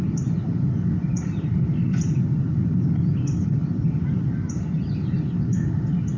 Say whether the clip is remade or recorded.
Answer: recorded